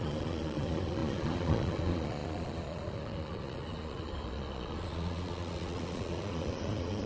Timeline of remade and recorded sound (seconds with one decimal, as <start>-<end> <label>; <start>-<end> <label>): 0.0-7.1 remade